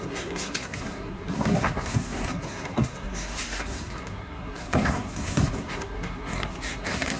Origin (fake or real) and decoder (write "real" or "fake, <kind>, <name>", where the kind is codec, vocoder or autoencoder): fake, codec, SNAC